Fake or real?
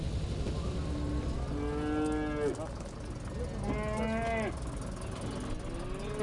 real